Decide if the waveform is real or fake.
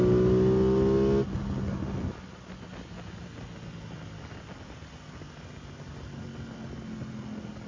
real